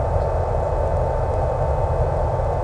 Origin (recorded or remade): recorded